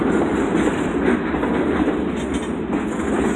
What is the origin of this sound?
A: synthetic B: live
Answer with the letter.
B